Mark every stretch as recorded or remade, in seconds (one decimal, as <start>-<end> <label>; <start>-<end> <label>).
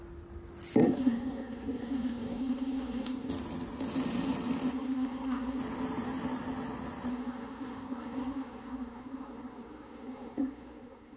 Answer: 0.0-0.8 recorded; 0.8-3.3 remade; 3.3-4.7 recorded; 4.7-5.6 remade; 5.6-7.1 recorded; 7.1-11.2 remade